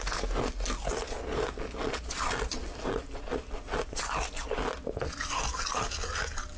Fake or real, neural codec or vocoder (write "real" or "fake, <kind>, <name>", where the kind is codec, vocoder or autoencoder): real